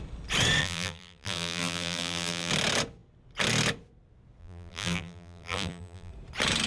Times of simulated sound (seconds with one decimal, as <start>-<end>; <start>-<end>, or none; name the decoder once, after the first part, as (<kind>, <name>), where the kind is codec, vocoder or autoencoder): 0.6-2.5 (vocoder, BigVGAN v2); 4.4-6.1